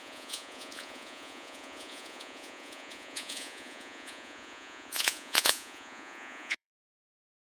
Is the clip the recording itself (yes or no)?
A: no